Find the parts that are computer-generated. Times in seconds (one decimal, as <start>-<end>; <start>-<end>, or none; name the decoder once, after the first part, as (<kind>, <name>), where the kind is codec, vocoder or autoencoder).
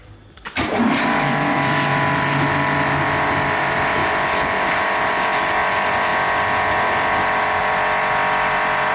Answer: 0.0-1.9 (vocoder, BigVGAN v2); 3.0-4.0; 4.8-6.1; 7.6-8.9